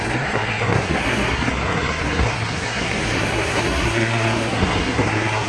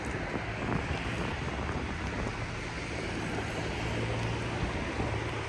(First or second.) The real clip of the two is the second